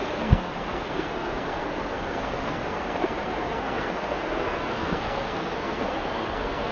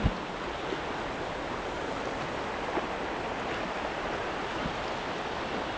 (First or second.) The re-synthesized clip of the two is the first